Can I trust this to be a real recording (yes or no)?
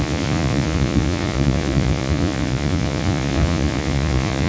no